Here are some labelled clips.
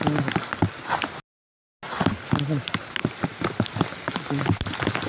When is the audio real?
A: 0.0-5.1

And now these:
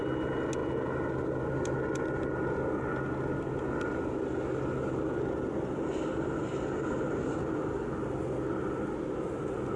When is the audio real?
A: 0.0-9.8